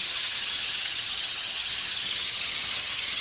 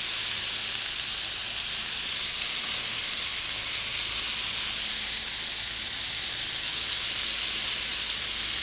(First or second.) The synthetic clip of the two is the first